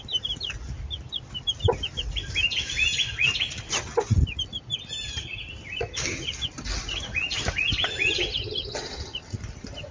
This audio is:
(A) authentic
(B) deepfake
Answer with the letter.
A